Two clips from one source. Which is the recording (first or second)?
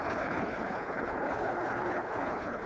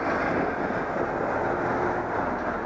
second